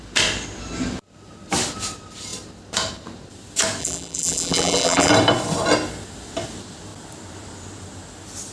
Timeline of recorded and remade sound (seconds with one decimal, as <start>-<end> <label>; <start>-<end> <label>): 0.0-3.8 recorded; 3.8-5.1 remade; 5.1-8.5 recorded